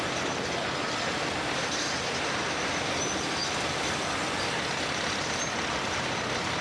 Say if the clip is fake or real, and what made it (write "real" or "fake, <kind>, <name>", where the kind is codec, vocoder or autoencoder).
real